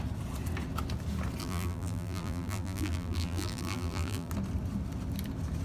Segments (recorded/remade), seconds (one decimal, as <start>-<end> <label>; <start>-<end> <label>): 0.0-1.4 recorded; 1.4-4.3 remade; 4.3-5.6 recorded